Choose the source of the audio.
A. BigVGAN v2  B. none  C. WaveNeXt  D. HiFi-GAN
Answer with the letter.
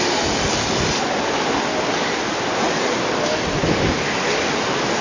B